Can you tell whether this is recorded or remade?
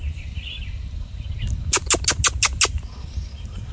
recorded